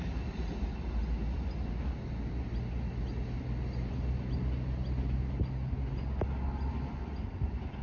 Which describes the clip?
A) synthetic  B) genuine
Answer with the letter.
B